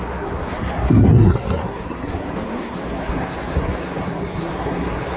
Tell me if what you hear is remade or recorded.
remade